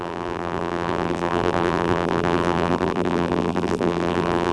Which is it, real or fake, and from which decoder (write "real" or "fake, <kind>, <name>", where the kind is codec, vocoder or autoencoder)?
fake, vocoder, BigVGAN v2